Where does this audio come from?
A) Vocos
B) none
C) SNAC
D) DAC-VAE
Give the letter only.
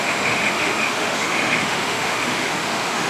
D